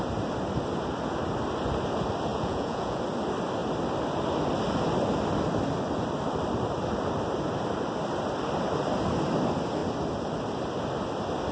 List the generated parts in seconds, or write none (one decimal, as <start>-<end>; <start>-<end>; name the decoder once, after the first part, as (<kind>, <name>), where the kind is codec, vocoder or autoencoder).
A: 2.3-3.0 (vocoder, Vocos)